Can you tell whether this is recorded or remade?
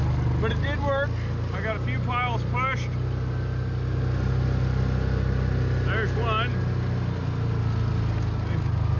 recorded